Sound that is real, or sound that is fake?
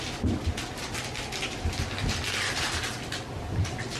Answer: real